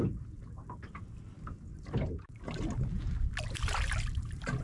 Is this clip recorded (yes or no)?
yes